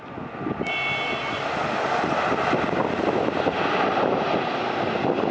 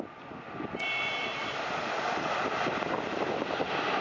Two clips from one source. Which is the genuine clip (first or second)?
first